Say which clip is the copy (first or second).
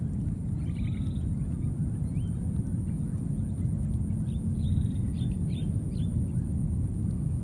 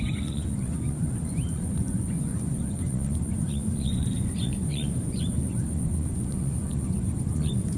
second